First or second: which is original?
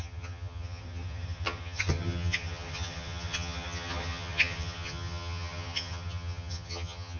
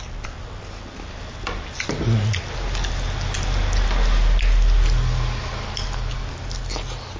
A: second